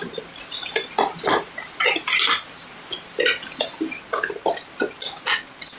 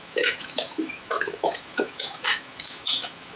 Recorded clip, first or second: first